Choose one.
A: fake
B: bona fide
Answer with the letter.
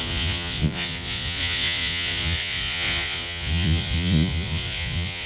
A